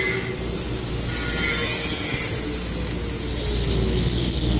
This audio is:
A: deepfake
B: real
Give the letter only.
B